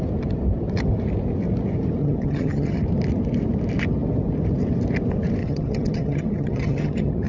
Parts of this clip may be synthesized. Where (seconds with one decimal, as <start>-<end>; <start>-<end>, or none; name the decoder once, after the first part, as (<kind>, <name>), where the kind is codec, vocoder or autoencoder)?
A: 2.0-2.8 (vocoder, HiFi-GAN); 5.4-7.3